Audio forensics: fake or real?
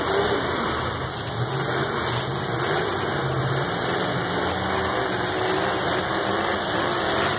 real